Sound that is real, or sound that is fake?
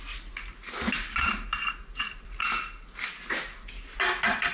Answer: real